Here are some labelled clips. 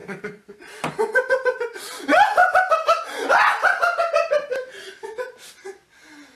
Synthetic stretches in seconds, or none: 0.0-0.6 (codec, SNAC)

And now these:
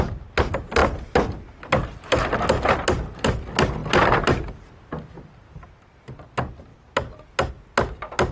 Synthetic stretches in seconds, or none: none

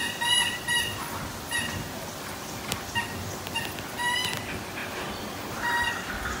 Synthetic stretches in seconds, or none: 0.0-0.8 (vocoder, BigVGAN v2); 4.8-5.8

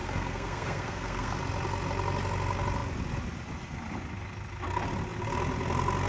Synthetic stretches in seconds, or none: 0.0-1.4 (codec, SNAC)

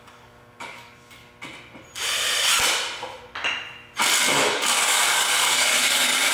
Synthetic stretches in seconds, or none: 0.0-1.2 (codec, DAC); 4.3-6.3

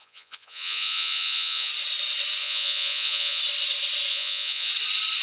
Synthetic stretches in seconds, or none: 0.0-1.7 (vocoder, Vocos); 2.4-3.4; 4.1-4.7

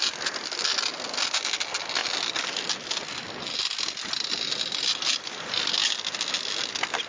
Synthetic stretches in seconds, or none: none